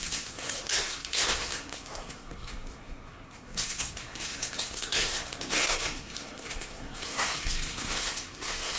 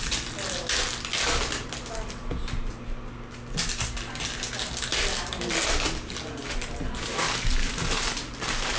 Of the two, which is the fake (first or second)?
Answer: first